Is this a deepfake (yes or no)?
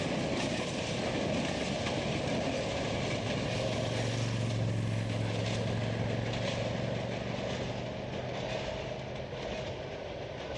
no